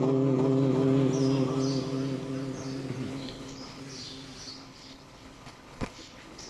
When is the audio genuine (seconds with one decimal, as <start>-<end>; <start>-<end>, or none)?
0.0-3.1; 3.8-4.5